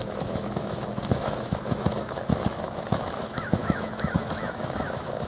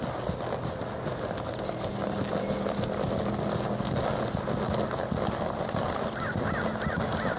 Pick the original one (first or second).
second